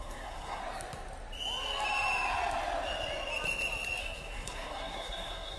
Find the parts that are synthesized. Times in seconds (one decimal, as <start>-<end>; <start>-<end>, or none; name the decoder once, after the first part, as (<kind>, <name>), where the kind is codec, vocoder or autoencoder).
0.0-0.6 (codec, SNAC); 4.0-5.6